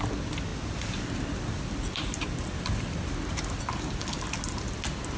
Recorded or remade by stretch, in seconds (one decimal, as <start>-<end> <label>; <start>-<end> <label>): 0.0-0.5 recorded; 0.5-3.6 remade; 3.6-5.2 recorded

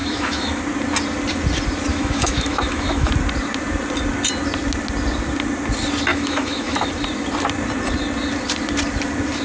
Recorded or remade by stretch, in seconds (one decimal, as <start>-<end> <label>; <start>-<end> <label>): 0.0-0.6 remade; 0.6-1.9 recorded; 1.9-3.1 remade; 3.1-6.1 recorded; 6.1-6.9 remade; 6.9-9.4 recorded

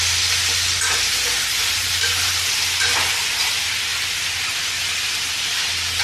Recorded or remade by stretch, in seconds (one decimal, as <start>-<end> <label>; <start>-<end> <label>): 0.0-1.6 recorded; 1.6-2.5 remade; 2.5-6.0 recorded

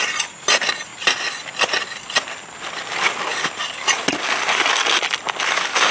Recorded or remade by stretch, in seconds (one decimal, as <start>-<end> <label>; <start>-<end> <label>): 0.0-5.9 recorded

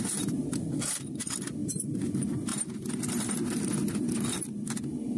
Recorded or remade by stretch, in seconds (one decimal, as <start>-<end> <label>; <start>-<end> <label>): 0.0-2.5 remade; 2.5-5.2 recorded

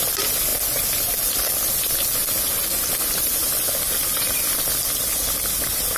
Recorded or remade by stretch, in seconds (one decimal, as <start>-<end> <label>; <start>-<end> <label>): 0.0-6.0 recorded

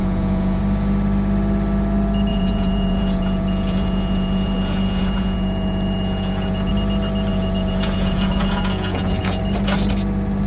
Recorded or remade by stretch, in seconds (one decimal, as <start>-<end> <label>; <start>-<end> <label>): 0.0-0.6 remade; 0.6-2.3 recorded; 2.3-6.7 remade; 6.7-7.3 recorded; 7.3-9.4 remade; 9.4-10.5 recorded